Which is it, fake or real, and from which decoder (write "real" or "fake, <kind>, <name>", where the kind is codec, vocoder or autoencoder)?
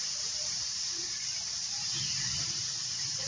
fake, vocoder, BigVGAN v2